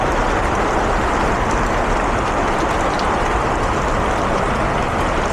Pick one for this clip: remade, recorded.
recorded